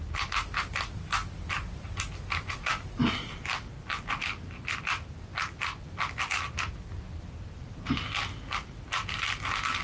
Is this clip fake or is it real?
real